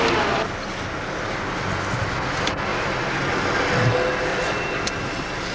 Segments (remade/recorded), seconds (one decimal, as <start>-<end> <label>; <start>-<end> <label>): 0.0-2.7 recorded; 2.7-3.3 remade; 3.3-4.3 recorded; 4.3-4.9 remade; 4.9-5.5 recorded